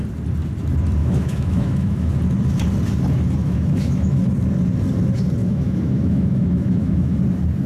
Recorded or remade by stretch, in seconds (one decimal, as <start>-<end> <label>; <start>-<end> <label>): 0.0-1.0 recorded; 1.0-2.1 remade; 2.1-3.4 recorded; 3.4-4.2 remade; 4.2-5.4 recorded; 5.4-7.2 remade; 7.2-7.7 recorded